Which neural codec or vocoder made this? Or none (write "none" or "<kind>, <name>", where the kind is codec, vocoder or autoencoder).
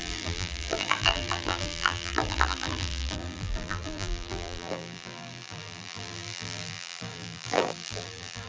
vocoder, BigVGAN v2